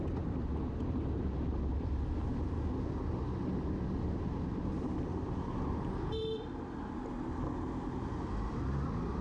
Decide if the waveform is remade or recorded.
recorded